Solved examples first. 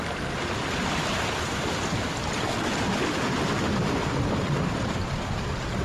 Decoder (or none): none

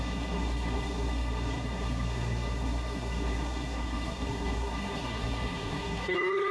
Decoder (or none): codec, SNAC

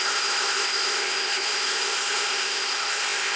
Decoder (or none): codec, ZipCodec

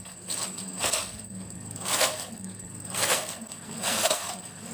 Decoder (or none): codec, SNAC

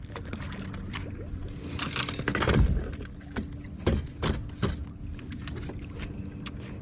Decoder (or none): none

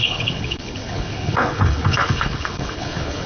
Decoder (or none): codec, HILCodec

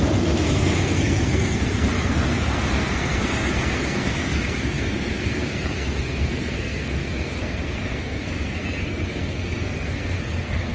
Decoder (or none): codec, SNAC